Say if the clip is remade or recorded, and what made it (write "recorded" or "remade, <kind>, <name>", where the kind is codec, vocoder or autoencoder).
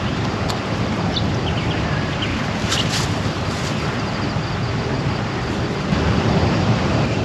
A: recorded